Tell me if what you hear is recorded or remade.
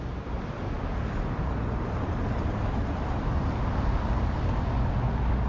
recorded